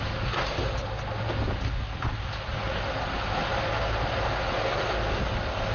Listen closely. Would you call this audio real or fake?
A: real